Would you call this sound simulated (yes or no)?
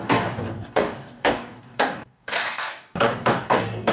yes